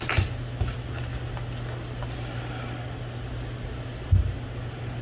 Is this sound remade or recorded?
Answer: recorded